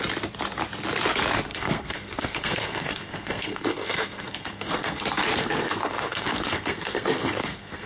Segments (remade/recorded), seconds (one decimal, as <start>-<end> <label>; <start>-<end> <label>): 0.0-1.5 recorded; 1.5-5.0 remade; 5.0-5.4 recorded; 5.4-7.9 remade